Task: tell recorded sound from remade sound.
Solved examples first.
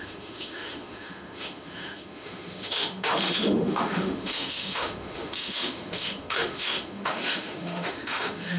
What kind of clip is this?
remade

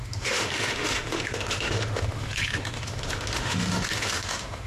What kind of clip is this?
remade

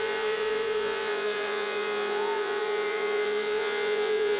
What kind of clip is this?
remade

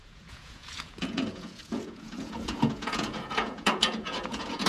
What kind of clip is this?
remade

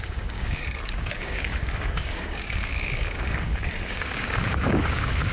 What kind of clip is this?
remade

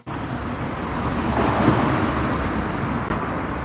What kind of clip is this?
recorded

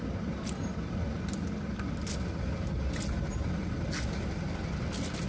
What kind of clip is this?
recorded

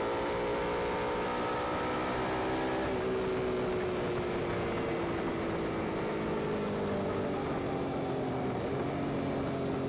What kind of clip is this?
recorded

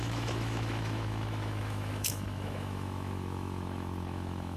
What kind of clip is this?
remade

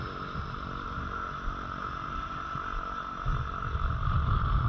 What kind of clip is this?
recorded